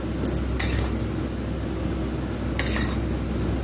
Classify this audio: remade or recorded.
recorded